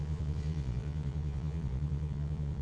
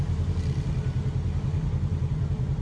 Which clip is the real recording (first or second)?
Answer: second